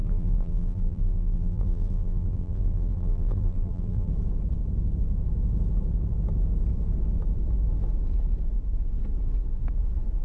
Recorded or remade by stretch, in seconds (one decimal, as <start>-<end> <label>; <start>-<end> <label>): 0.0-4.1 remade; 4.1-10.2 recorded